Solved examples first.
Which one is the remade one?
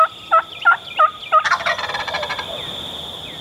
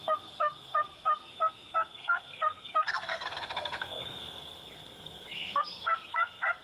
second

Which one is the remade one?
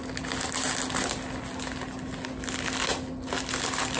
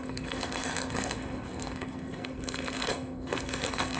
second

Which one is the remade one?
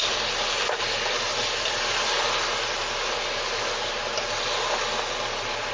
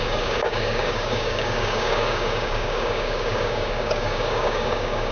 second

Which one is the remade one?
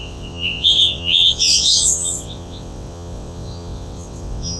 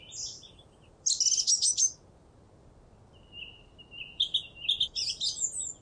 first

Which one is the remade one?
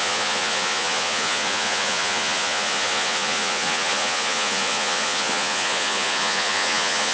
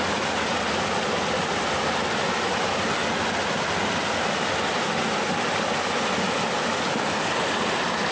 first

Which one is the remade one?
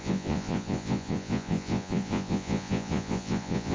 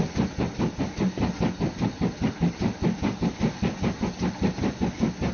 first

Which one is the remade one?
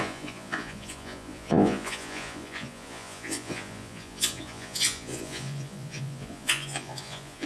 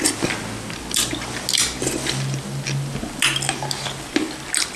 first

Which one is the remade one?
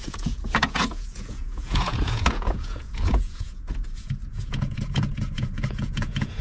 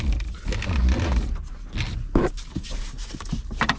first